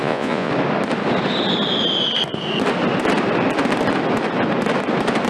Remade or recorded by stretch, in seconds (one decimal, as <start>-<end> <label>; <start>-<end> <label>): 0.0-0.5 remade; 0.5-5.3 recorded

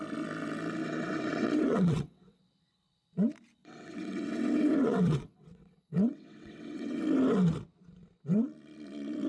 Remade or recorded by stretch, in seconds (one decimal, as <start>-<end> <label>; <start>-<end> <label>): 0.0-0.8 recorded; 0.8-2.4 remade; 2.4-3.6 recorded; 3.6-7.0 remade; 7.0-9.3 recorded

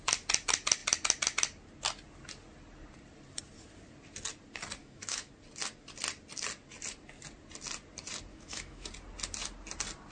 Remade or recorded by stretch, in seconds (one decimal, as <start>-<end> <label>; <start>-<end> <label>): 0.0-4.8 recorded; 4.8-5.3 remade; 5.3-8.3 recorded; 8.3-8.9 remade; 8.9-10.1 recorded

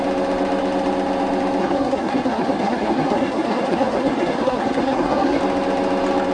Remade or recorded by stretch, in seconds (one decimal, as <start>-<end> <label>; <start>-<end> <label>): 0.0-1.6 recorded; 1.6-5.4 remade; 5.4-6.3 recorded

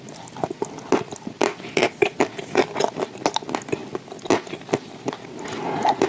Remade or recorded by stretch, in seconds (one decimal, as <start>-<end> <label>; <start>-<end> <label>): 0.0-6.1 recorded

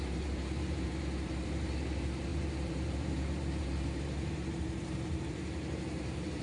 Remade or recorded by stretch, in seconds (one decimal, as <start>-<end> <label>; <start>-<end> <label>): 0.0-6.4 remade